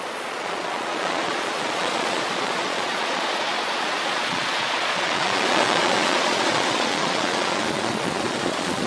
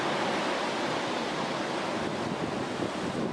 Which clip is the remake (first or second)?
first